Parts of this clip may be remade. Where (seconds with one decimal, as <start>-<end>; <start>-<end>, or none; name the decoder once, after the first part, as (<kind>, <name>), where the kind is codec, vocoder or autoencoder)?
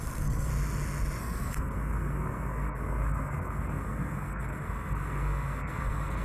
0.0-0.5 (codec, SNAC); 1.2-6.2